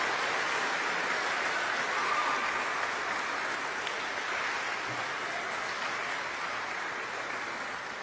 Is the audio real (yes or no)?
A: yes